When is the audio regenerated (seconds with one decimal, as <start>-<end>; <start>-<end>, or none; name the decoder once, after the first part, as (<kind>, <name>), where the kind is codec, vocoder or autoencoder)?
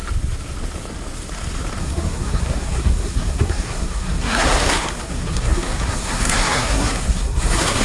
1.8-7.8 (codec, SNAC)